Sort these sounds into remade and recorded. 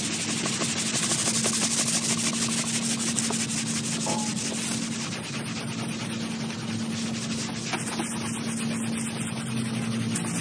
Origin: recorded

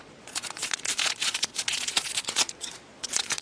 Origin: remade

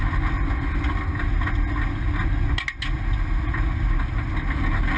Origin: recorded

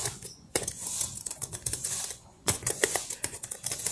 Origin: remade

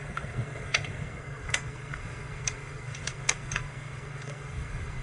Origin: remade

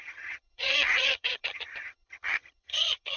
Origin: remade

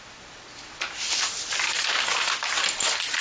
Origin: recorded